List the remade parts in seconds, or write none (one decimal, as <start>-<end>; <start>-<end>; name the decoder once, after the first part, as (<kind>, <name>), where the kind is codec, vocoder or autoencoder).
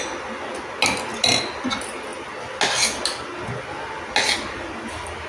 none